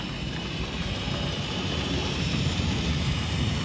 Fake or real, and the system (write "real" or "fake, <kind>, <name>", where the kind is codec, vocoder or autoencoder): fake, vocoder, BigVGAN v2